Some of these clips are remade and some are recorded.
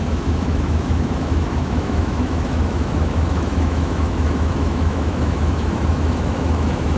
remade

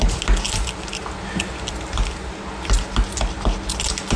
recorded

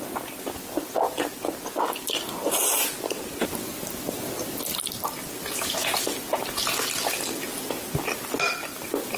recorded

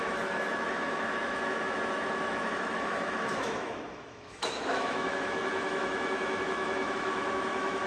remade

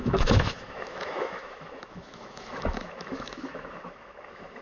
remade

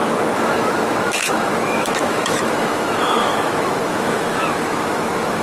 remade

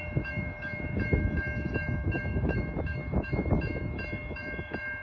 remade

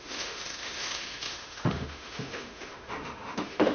remade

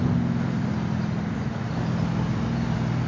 recorded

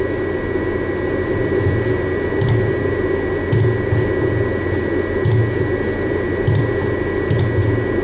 recorded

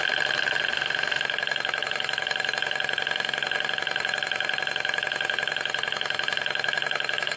recorded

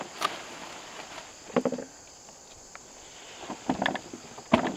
recorded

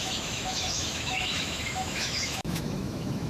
remade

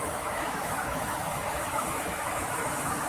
remade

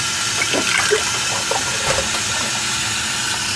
recorded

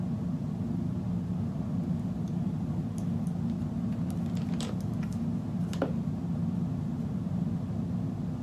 recorded